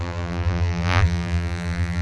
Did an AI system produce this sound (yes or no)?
yes